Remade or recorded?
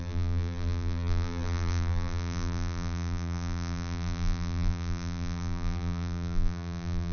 remade